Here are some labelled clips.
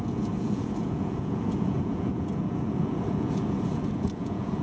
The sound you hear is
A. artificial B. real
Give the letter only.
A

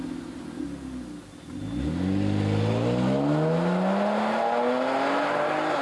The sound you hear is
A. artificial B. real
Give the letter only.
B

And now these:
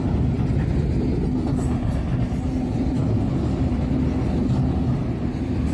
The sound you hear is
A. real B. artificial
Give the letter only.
A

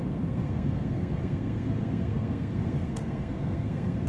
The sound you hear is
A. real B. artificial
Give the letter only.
B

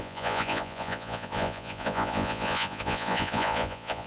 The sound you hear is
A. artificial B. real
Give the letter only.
A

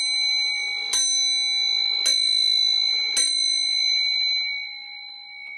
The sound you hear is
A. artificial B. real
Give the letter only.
B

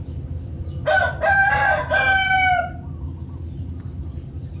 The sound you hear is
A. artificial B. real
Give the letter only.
B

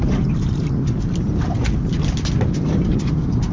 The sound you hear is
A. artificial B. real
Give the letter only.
B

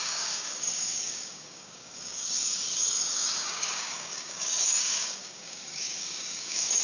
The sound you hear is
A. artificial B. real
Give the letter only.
A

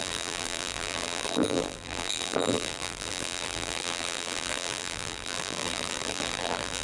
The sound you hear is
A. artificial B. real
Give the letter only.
A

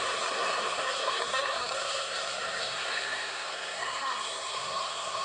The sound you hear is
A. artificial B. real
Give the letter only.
A